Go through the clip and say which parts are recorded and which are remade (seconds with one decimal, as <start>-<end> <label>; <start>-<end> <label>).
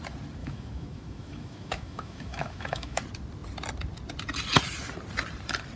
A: 0.0-0.4 recorded; 0.4-3.0 remade; 3.0-5.8 recorded